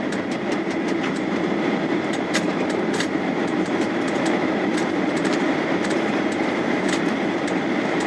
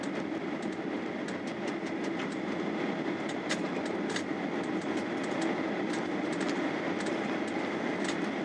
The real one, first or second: second